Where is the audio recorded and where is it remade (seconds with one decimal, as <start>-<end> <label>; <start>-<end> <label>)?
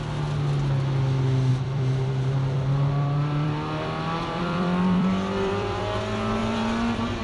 0.0-1.5 recorded; 1.5-5.8 remade; 5.8-6.4 recorded; 6.4-7.2 remade